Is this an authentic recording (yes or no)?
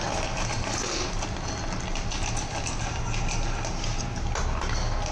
yes